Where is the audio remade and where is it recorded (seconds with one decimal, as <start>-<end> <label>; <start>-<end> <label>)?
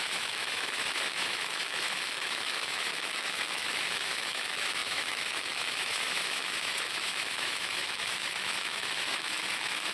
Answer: 0.0-9.9 remade